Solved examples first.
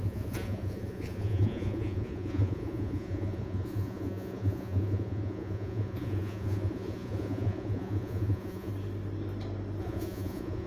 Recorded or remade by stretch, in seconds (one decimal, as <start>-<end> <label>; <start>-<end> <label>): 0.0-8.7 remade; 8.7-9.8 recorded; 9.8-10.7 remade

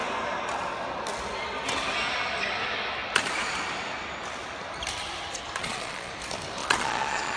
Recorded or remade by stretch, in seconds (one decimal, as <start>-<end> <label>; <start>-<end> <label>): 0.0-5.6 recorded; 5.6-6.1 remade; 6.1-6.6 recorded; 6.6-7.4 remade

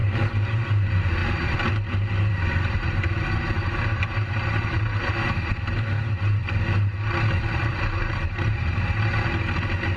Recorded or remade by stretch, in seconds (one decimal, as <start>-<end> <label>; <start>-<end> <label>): 0.0-6.4 remade; 6.4-7.4 recorded; 7.4-10.0 remade

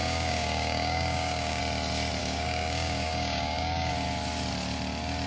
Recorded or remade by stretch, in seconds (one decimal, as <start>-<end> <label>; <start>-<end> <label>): 0.0-1.6 remade; 1.6-2.2 recorded; 2.2-3.9 remade; 3.9-5.3 recorded

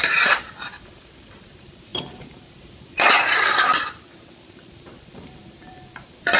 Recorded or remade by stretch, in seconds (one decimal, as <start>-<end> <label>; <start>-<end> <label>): 0.0-6.4 remade